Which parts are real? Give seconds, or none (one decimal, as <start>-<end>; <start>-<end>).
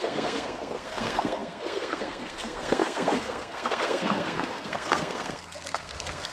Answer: none